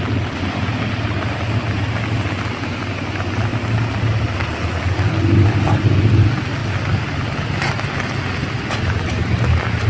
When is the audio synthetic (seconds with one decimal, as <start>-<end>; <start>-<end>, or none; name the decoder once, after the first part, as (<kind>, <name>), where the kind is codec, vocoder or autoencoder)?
none